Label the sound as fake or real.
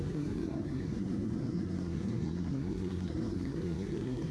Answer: fake